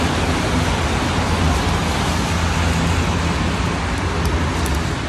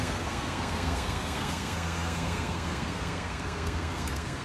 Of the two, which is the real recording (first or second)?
first